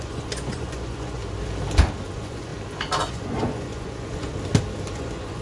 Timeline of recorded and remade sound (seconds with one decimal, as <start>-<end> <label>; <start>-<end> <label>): 0.0-1.2 remade; 1.2-2.1 recorded; 2.1-2.5 remade; 2.5-3.1 recorded; 3.1-4.3 remade; 4.3-4.9 recorded; 4.9-5.4 remade